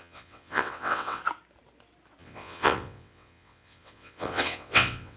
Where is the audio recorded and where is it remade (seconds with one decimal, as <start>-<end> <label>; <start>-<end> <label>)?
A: 0.0-1.2 remade; 1.2-2.2 recorded; 2.2-5.2 remade